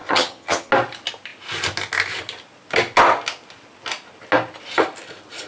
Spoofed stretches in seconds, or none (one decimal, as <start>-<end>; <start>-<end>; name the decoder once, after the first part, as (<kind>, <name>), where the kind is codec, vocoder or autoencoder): 0.0-0.7 (vocoder, HiFi-GAN)